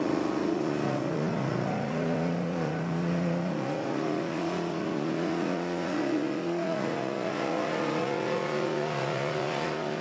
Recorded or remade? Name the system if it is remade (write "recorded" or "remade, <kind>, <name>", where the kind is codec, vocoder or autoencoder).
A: remade, vocoder, Vocos